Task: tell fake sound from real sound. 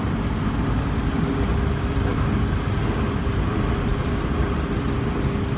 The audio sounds real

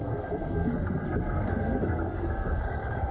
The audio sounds fake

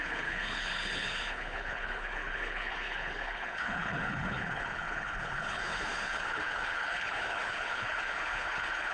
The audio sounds fake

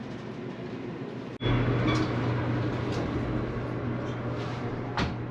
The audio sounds real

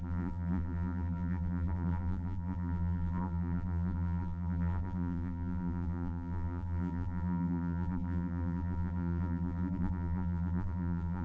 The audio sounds fake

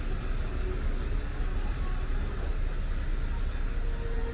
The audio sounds real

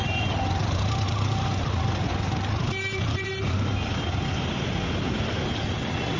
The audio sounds real